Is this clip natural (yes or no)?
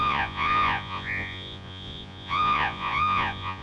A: no